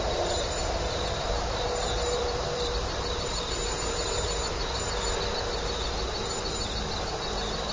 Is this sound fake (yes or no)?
yes